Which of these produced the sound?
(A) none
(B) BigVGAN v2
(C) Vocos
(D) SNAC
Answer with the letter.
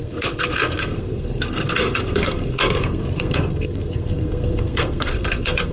D